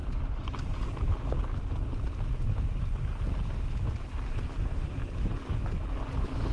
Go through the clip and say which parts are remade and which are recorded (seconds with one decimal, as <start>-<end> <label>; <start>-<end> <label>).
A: 0.0-6.5 recorded

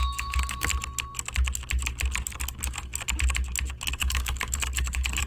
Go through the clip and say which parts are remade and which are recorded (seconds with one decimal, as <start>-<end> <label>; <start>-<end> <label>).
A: 0.0-0.7 remade; 0.7-3.9 recorded; 3.9-5.3 remade

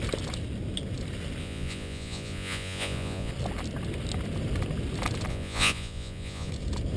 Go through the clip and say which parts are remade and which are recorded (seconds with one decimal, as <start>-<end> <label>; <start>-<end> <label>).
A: 0.0-1.4 recorded; 1.4-3.3 remade; 3.3-5.3 recorded; 5.3-6.5 remade; 6.5-7.0 recorded

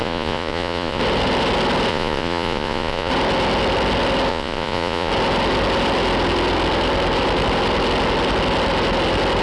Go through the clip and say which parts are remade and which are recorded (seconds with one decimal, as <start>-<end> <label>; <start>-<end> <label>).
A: 0.0-1.0 remade; 1.0-1.9 recorded; 1.9-3.1 remade; 3.1-4.3 recorded; 4.3-5.1 remade; 5.1-9.4 recorded

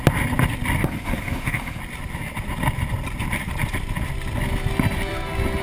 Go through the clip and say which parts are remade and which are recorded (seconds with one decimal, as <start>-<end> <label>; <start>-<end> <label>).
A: 0.0-0.8 recorded; 0.8-1.8 remade; 1.8-5.6 recorded

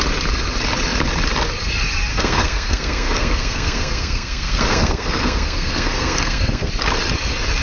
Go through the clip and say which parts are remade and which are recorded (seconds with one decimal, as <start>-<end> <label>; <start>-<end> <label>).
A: 0.0-2.1 recorded; 2.1-6.7 remade; 6.7-7.6 recorded

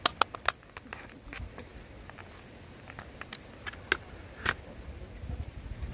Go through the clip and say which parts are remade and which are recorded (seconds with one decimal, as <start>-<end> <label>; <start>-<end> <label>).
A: 0.0-5.9 recorded

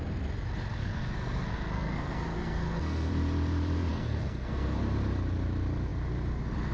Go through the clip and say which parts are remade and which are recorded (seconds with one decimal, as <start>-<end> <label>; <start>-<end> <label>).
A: 0.0-0.8 recorded; 0.8-3.1 remade; 3.1-3.9 recorded; 3.9-4.8 remade; 4.8-6.7 recorded